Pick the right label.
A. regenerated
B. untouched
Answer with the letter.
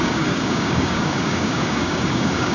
A